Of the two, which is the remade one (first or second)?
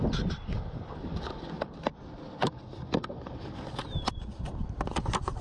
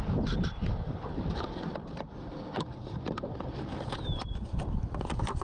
second